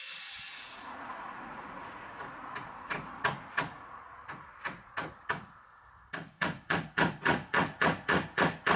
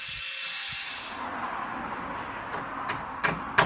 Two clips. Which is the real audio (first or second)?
second